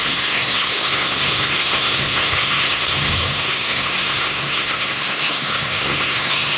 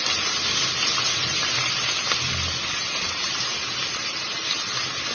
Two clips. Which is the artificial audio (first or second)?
first